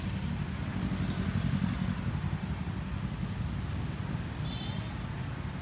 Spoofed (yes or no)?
no